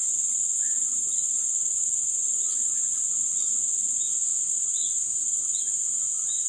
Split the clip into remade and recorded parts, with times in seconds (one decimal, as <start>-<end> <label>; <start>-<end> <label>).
0.0-6.5 recorded